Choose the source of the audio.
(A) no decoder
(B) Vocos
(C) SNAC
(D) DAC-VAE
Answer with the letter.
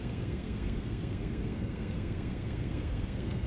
C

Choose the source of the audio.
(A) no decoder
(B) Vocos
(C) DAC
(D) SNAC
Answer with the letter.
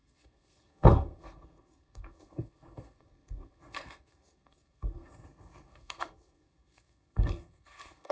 D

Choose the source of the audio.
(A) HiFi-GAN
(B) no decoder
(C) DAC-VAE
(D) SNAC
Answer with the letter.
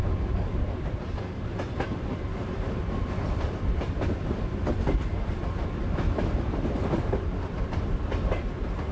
B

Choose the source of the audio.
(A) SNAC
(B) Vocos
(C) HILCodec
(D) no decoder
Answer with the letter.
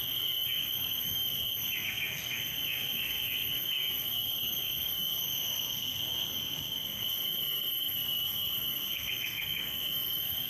A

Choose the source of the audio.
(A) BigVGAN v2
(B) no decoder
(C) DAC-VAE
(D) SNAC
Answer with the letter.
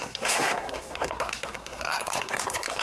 D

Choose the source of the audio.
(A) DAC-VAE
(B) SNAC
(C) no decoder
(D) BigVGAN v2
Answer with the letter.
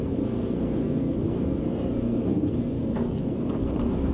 B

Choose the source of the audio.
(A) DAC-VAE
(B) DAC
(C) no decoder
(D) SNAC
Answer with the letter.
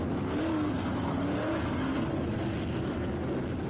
C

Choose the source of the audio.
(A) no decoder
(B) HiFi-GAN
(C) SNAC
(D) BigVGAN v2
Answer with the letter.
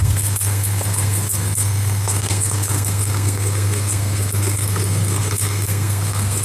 C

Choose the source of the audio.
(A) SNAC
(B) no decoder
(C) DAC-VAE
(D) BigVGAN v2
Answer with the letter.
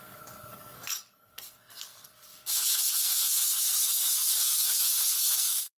A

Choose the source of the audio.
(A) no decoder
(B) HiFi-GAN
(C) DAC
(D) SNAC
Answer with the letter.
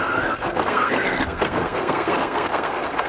D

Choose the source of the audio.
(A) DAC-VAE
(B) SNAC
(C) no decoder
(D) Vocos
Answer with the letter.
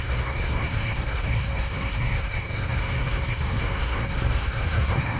B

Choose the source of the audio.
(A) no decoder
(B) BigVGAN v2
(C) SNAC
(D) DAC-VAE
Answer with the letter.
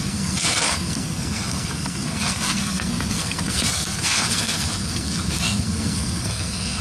C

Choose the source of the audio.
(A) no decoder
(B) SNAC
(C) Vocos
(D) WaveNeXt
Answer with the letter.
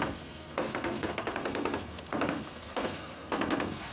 B